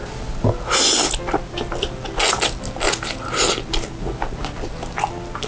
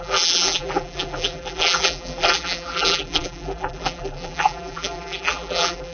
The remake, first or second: second